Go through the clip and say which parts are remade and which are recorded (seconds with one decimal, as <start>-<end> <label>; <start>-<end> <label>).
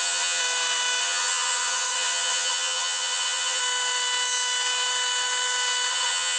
0.0-0.4 remade; 0.4-1.0 recorded; 1.0-3.6 remade; 3.6-5.9 recorded; 5.9-6.4 remade